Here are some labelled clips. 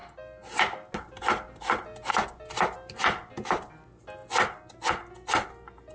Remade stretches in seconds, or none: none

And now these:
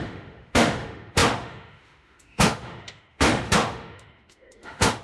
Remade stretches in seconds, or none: 0.0-5.0 (autoencoder, DAC-VAE)

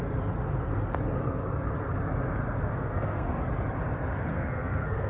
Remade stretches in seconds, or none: 2.6-3.4 (codec, SNAC); 4.3-5.1

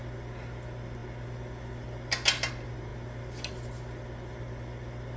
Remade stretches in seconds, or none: none

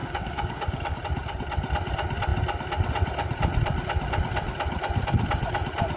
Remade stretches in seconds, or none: 0.0-1.0 (codec, DAC)

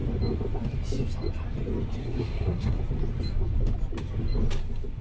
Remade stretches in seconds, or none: 2.0-2.8 (codec, SNAC)

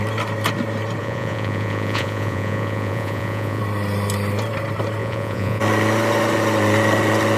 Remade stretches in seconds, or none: 1.0-3.6 (vocoder, Vocos); 5.0-5.6